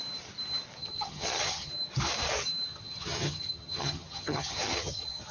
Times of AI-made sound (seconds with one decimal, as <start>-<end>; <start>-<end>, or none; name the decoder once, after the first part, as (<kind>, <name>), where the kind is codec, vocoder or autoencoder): 0.8-1.7 (vocoder, HiFi-GAN); 2.7-5.3